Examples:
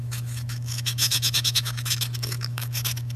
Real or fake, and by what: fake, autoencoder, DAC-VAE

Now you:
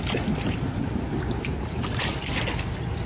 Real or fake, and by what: real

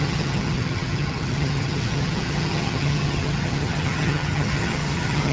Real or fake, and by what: fake, vocoder, HiFi-GAN